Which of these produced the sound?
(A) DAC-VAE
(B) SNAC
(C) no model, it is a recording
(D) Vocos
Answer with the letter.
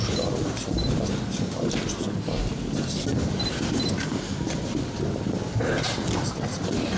C